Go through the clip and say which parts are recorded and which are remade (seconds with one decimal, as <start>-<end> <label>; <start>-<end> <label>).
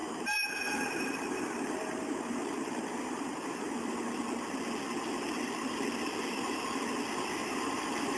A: 0.0-4.1 remade; 4.1-7.4 recorded; 7.4-8.2 remade